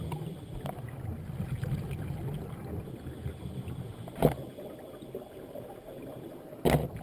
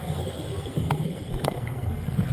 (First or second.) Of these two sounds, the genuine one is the first